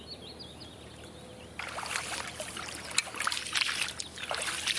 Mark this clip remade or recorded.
recorded